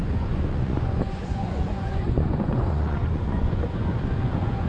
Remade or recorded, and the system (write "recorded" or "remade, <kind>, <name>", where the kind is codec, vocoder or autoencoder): remade, vocoder, Vocos